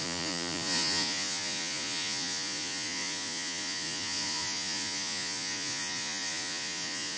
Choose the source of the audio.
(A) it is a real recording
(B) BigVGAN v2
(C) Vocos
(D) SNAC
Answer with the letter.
C